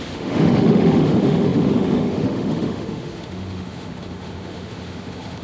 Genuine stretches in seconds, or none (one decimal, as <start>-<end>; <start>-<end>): none